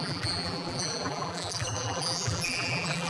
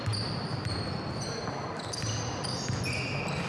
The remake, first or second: first